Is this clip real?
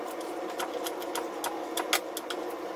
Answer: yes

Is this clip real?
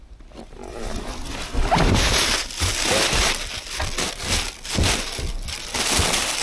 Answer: yes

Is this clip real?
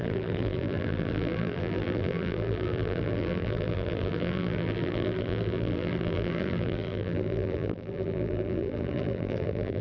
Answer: no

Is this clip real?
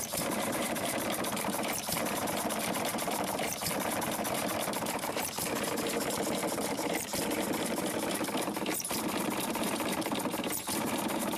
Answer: no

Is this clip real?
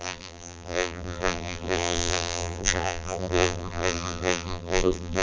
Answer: no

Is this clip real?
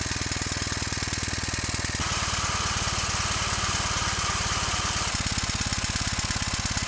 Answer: yes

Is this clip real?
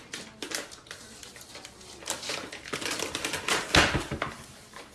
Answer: no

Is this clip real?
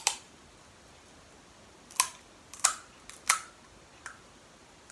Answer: yes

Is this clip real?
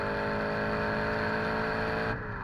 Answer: yes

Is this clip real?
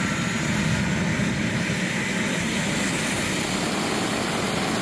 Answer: yes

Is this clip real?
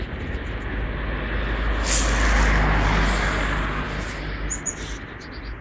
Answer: yes